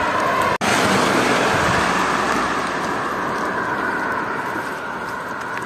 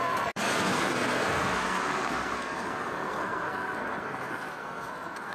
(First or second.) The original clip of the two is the first